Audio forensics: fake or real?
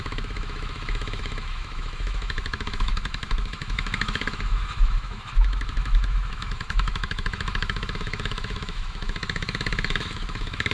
fake